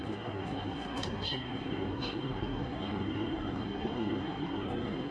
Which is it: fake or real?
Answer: fake